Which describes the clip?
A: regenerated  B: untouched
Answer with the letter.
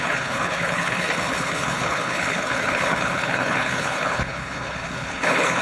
A